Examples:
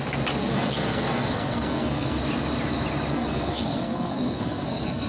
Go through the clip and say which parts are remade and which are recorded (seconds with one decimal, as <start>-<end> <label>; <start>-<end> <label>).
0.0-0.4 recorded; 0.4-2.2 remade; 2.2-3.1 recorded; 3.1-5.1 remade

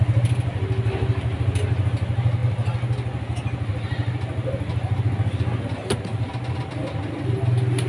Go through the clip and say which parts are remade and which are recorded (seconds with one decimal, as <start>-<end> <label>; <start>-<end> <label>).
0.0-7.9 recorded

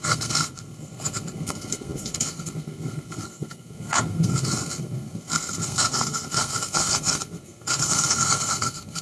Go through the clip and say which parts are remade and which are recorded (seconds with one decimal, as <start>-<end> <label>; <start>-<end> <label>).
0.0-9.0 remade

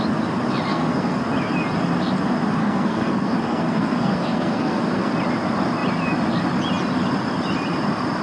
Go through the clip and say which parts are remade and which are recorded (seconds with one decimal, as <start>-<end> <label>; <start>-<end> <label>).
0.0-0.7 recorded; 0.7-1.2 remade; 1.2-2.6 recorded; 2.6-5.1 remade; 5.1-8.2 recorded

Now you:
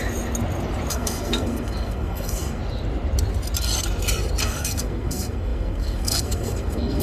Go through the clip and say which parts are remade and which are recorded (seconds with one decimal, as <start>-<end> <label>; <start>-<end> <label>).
0.0-0.9 recorded; 0.9-2.6 remade; 2.6-4.4 recorded; 4.4-7.0 remade